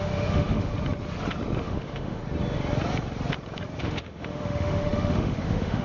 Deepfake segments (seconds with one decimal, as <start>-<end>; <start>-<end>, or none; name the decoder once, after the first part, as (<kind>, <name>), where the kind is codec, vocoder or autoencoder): 0.0-0.7 (autoencoder, DAC-VAE); 1.6-2.2; 3.8-5.8